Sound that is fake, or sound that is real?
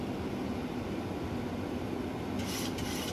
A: real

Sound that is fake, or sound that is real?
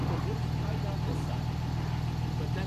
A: real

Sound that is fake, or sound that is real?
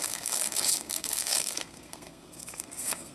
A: fake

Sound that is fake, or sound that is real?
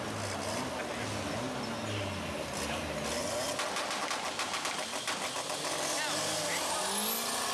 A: real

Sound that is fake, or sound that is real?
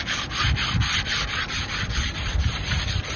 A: real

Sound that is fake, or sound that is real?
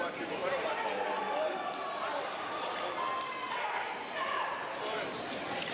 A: fake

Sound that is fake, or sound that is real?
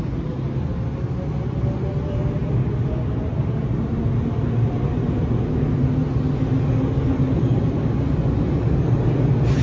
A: real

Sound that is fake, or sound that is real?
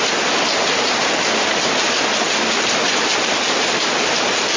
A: real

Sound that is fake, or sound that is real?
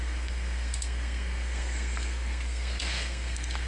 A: fake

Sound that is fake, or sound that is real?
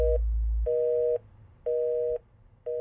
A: real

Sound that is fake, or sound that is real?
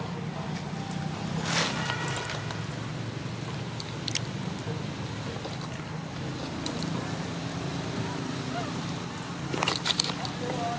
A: real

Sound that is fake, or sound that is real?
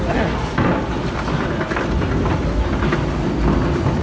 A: real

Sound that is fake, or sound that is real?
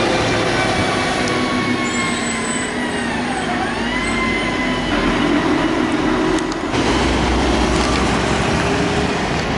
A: real